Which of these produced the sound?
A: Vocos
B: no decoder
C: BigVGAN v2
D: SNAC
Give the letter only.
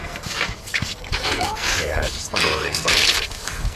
D